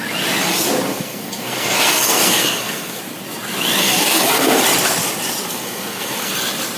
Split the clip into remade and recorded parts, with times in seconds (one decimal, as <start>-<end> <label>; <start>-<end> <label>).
0.0-0.9 recorded; 0.9-3.0 remade; 3.0-3.8 recorded; 3.8-4.6 remade; 4.6-5.5 recorded; 5.5-6.3 remade; 6.3-6.8 recorded